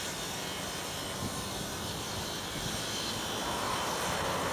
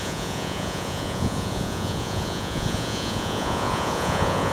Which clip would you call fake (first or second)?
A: second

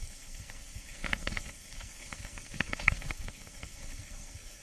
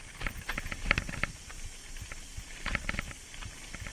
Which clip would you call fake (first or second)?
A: first